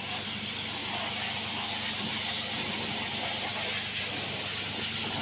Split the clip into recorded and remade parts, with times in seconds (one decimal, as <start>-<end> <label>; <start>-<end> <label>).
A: 0.0-5.2 recorded